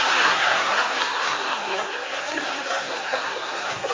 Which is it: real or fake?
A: fake